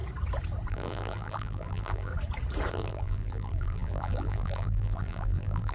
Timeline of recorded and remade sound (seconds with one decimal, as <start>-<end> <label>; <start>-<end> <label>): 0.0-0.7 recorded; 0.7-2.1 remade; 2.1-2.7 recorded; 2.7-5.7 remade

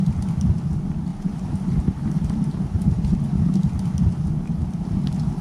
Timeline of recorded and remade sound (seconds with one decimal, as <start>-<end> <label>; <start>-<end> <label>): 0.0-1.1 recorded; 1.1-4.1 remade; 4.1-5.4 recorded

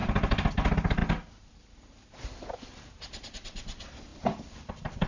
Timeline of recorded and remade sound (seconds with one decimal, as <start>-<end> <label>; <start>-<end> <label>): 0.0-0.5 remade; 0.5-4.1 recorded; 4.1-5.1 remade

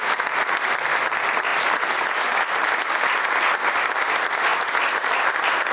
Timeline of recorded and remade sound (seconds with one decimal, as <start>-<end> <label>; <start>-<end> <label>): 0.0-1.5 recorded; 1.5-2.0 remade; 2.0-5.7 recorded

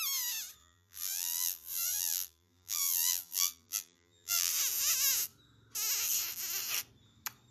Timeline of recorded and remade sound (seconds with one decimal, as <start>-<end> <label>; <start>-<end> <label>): 0.0-0.6 recorded; 0.6-4.5 remade; 4.5-7.5 recorded

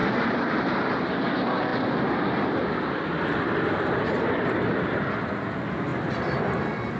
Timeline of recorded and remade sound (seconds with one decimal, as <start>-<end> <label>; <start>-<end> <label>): 0.0-1.1 remade; 1.1-1.7 recorded; 1.7-4.0 remade; 4.0-5.9 recorded; 5.9-6.4 remade; 6.4-7.0 recorded

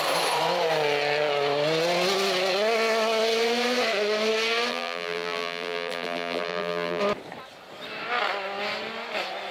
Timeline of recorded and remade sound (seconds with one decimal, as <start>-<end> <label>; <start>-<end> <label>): 0.0-4.7 recorded; 4.7-7.0 remade; 7.0-9.5 recorded

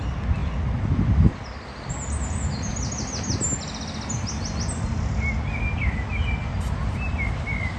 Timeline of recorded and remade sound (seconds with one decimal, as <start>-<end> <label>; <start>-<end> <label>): 0.0-7.8 recorded